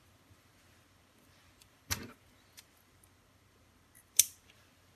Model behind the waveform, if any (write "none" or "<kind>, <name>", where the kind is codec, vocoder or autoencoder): vocoder, BigVGAN v2